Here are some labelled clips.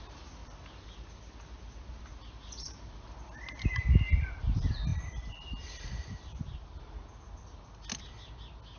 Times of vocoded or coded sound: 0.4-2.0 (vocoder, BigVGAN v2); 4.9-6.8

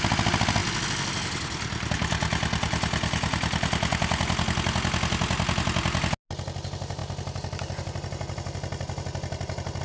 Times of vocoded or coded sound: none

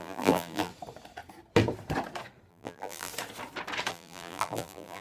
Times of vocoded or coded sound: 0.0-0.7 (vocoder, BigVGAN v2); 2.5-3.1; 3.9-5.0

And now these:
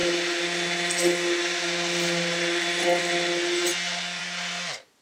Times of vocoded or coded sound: none

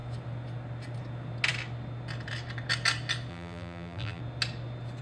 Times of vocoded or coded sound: 3.3-4.2 (vocoder, BigVGAN v2)

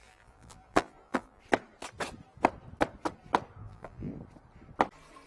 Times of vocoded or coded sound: 0.0-1.4 (vocoder, BigVGAN v2); 3.6-4.1

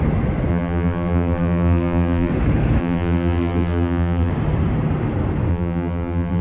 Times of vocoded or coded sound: 0.5-2.3 (vocoder, BigVGAN v2); 2.8-4.3; 5.5-6.4

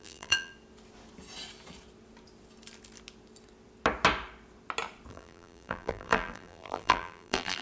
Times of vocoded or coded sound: 0.0-0.5 (vocoder, BigVGAN v2); 5.1-7.6